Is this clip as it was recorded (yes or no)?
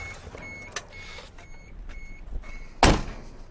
yes